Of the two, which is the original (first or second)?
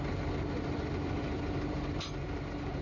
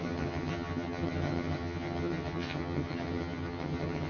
first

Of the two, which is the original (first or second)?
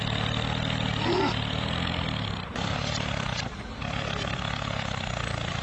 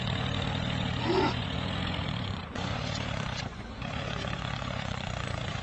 first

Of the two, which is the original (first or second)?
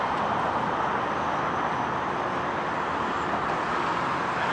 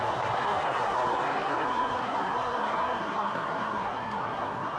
first